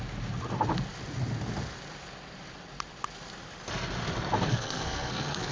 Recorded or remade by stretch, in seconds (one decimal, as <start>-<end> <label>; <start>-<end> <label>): 0.0-4.5 recorded; 4.5-5.5 remade